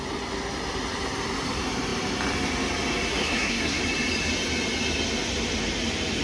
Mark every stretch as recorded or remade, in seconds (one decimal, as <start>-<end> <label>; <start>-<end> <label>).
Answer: 0.0-3.1 recorded; 3.1-3.8 remade; 3.8-6.2 recorded